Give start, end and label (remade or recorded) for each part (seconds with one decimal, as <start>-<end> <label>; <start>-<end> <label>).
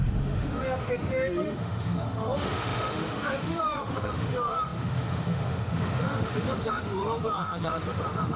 0.0-8.4 remade